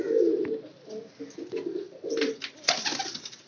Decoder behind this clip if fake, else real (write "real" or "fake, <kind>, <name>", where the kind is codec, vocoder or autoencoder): real